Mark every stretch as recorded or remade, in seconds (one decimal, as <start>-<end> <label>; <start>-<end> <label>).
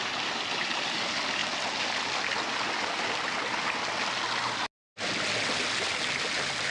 0.0-6.7 recorded